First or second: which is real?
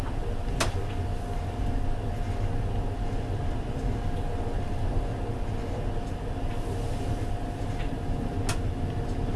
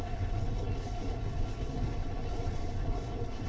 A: first